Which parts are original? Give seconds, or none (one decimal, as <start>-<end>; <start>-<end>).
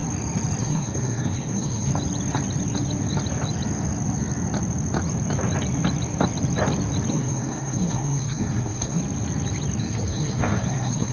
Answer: 0.0-0.6; 1.9-7.1; 9.0-9.8